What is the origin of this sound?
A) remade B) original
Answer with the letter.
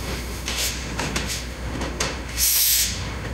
A